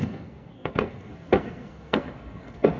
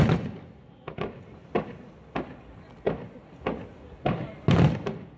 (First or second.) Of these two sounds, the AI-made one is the first